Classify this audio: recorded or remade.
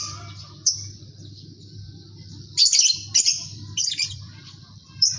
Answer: remade